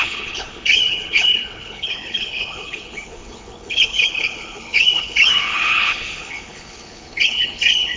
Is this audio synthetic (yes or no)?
yes